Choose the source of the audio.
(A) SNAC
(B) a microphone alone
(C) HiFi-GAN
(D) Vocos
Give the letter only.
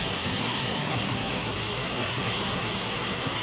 A